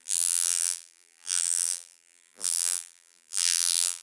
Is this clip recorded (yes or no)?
no